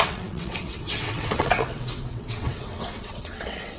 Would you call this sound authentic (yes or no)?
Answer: no